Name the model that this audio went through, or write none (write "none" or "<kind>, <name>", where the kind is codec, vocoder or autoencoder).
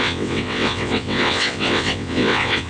vocoder, WaveNeXt